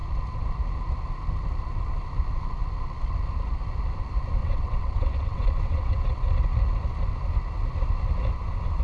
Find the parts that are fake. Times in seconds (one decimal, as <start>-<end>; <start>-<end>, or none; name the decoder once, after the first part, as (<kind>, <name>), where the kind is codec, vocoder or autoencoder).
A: 4.4-6.3 (vocoder, WaveNeXt)